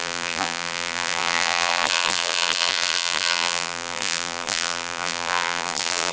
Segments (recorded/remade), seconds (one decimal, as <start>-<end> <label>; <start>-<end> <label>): 0.0-6.1 remade